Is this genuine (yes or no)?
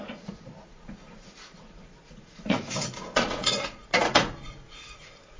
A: no